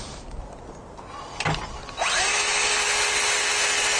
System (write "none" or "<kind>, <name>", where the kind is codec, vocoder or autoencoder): none